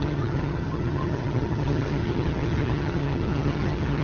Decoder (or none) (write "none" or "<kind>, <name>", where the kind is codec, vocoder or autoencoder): vocoder, HiFi-GAN